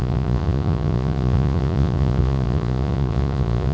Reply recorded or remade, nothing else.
remade